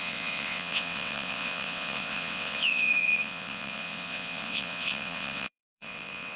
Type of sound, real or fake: fake